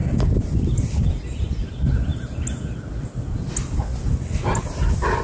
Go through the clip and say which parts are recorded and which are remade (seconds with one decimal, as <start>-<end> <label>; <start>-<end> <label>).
0.0-5.2 recorded